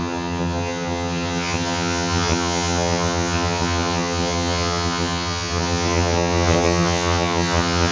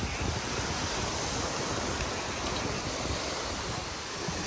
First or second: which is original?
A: second